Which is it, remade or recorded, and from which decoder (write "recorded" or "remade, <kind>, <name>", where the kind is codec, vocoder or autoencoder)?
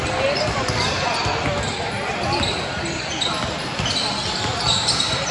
recorded